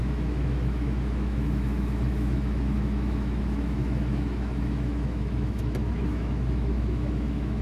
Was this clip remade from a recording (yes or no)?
yes